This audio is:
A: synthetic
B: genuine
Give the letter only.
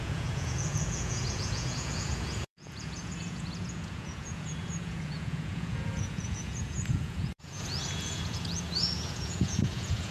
A